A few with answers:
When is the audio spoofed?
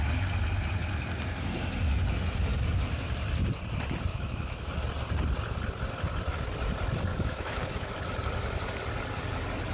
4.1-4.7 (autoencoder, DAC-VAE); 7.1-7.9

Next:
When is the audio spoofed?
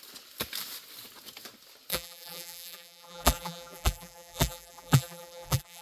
1.9-5.8 (vocoder, BigVGAN v2)